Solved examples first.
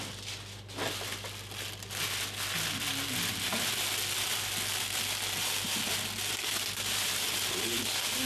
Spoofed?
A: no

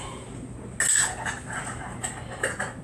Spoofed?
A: no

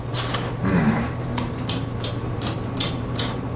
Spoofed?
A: yes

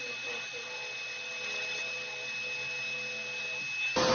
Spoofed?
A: no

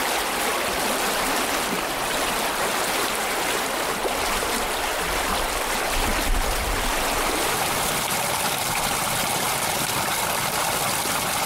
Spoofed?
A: no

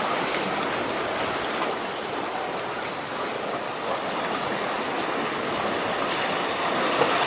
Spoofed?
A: no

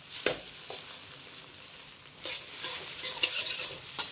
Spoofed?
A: no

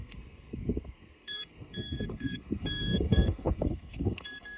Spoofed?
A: yes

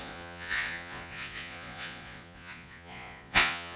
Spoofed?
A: yes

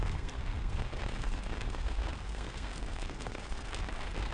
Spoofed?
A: yes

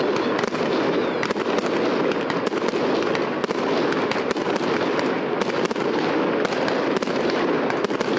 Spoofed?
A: no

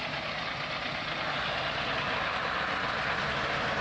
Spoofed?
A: no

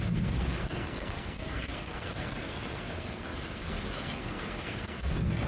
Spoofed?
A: yes